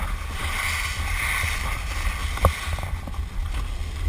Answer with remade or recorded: recorded